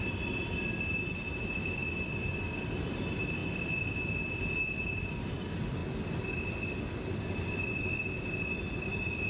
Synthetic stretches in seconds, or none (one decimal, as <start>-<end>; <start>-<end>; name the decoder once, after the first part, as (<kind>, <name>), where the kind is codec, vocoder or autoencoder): none